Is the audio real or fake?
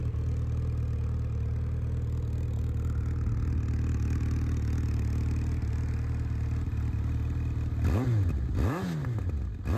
real